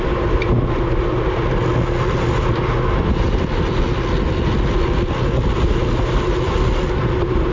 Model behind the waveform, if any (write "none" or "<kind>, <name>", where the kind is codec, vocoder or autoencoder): none